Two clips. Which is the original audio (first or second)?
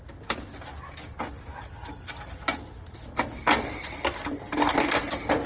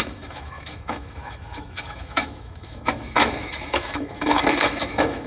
first